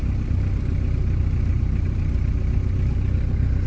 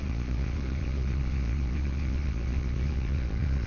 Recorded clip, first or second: first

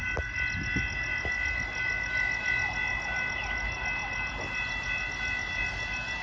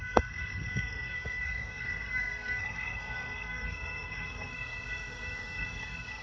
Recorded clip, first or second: first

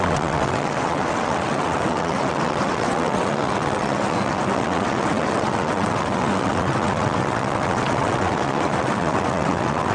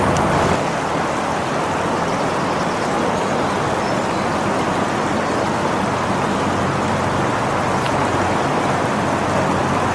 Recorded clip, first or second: second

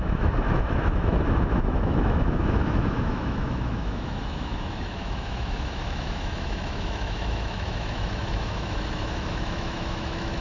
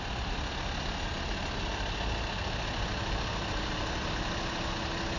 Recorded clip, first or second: second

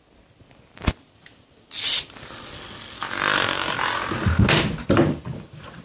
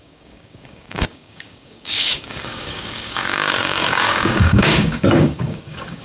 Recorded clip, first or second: first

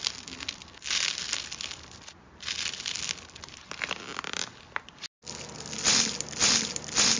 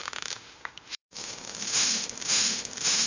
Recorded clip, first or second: first